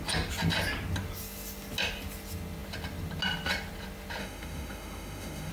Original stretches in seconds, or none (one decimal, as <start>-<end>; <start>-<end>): 0.0-4.2